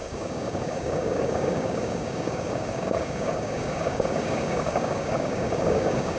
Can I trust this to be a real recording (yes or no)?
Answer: no